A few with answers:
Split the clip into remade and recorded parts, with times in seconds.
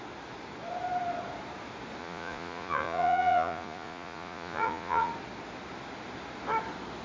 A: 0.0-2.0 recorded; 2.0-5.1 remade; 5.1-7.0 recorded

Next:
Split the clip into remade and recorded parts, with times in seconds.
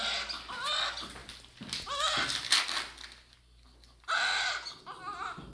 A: 0.0-5.5 recorded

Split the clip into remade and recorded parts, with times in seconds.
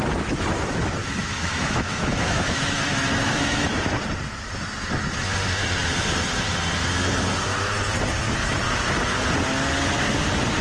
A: 0.0-1.0 recorded; 1.0-3.7 remade; 3.7-10.6 recorded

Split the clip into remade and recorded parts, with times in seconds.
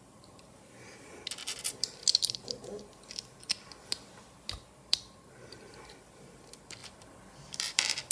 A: 0.0-6.8 recorded; 6.8-8.1 remade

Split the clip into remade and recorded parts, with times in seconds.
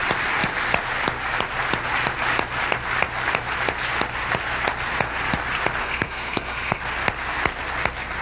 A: 0.0-5.8 recorded; 5.8-6.8 remade; 6.8-8.2 recorded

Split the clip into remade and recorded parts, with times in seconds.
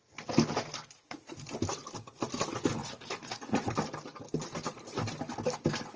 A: 0.0-2.8 recorded; 2.8-3.7 remade; 3.7-6.0 recorded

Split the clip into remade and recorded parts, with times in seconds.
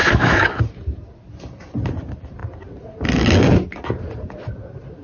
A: 0.0-0.6 remade; 0.6-5.0 recorded